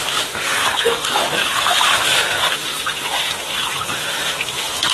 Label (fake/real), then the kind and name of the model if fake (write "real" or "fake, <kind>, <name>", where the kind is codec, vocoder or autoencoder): fake, autoencoder, DAC-VAE